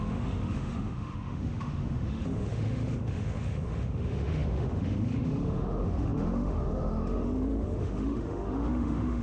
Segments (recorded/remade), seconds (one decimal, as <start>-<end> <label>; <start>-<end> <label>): 0.0-9.2 remade